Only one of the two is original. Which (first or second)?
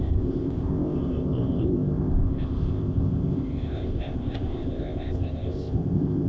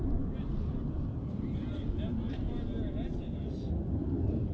second